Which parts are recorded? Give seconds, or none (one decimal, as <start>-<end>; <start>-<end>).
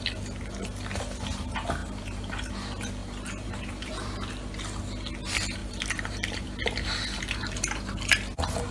0.0-1.8; 2.5-3.0; 4.3-5.6; 6.6-8.7